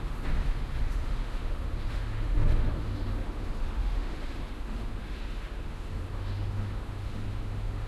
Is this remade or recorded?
remade